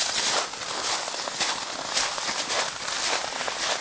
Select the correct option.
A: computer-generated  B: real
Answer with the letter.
B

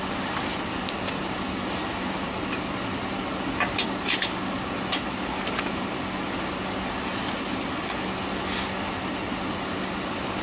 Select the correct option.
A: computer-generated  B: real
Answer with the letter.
B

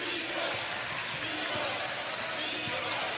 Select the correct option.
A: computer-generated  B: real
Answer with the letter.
B